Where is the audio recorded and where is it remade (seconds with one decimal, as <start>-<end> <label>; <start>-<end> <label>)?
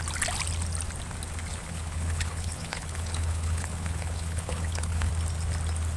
0.0-1.5 recorded; 1.5-5.1 remade; 5.1-6.0 recorded